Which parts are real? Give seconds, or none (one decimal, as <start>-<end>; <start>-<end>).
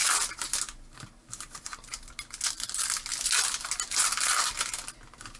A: 0.0-5.4